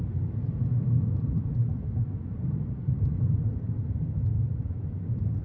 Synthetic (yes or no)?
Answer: yes